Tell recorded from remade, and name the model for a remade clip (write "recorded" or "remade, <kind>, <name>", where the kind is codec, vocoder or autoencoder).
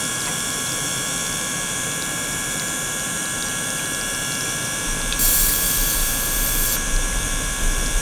remade, vocoder, BigVGAN v2